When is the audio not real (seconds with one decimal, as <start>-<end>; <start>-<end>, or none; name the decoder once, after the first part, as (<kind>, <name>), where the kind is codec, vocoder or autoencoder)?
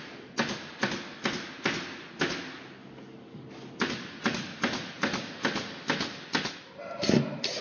2.8-3.4 (codec, DAC)